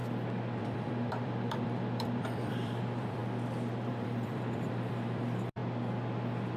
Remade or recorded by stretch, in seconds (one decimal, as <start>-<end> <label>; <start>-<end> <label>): 0.0-0.6 recorded; 0.6-3.2 remade; 3.2-3.9 recorded; 3.9-5.6 remade; 5.6-6.6 recorded